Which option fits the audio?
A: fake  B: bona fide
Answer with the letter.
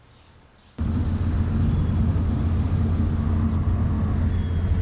B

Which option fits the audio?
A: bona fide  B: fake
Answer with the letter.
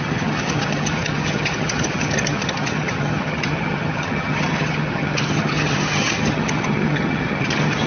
B